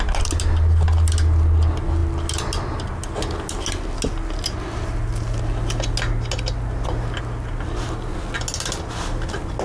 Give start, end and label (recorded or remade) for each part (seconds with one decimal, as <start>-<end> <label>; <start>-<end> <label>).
0.0-9.6 recorded